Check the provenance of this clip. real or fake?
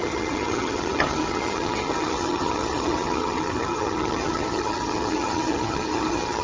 fake